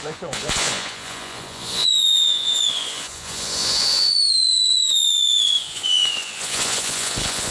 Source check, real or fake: fake